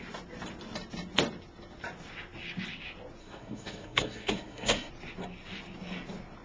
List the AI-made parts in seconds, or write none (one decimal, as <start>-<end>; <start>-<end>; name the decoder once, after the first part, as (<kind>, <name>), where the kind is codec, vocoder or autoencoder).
3.2-4.9 (codec, SNAC)